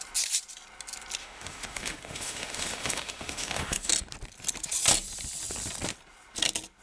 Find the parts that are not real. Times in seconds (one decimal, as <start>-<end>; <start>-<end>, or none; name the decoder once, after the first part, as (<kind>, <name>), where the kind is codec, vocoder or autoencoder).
1.2-3.9 (autoencoder, DAC-VAE)